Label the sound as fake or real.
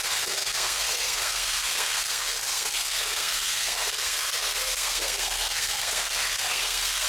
fake